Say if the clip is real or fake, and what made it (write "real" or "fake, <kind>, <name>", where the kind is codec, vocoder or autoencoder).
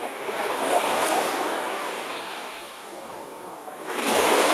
fake, codec, DAC